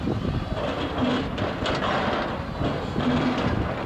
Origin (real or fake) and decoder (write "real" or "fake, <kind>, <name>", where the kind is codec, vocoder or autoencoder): real